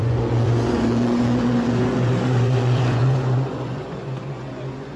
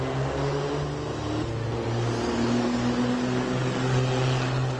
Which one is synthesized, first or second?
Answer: first